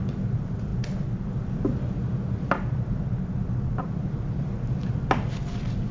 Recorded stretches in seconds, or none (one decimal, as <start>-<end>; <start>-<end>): 0.0-5.9